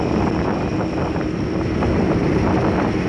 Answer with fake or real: real